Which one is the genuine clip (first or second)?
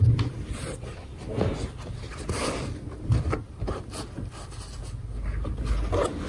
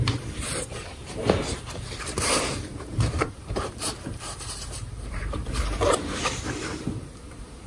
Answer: first